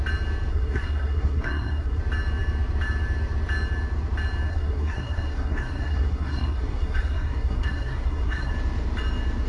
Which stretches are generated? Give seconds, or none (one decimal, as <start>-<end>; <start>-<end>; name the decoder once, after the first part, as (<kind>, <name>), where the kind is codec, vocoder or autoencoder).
0.5-2.0 (codec, SNAC); 4.5-8.5